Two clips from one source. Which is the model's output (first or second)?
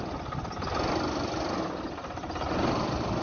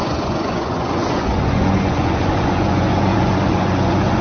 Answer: second